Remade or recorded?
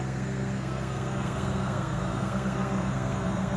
remade